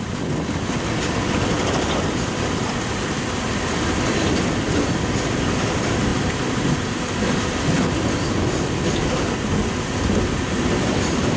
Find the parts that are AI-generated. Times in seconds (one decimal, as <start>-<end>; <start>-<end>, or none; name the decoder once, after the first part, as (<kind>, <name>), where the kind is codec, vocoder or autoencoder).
none